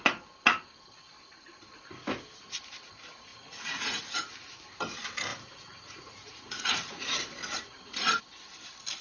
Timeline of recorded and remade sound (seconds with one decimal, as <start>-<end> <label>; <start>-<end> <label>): 0.0-3.3 recorded; 3.3-4.0 remade; 4.0-5.3 recorded; 5.3-7.2 remade; 7.2-9.0 recorded